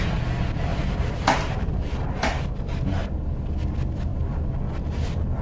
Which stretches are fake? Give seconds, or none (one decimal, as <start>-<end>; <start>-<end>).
0.7-1.8